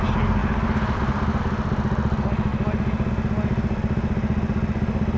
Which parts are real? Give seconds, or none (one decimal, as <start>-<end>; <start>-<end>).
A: 0.0-5.2